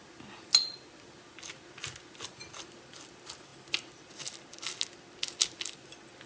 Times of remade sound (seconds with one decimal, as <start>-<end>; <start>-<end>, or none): none